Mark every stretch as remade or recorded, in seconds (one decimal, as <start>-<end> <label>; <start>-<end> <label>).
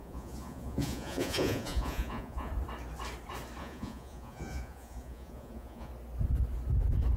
0.0-2.5 remade; 2.5-3.6 recorded; 3.6-5.9 remade; 5.9-7.2 recorded